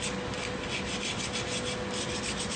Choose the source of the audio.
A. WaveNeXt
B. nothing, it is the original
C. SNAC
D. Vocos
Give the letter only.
B